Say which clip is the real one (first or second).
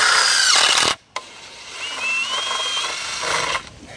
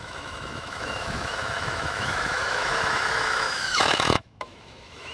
first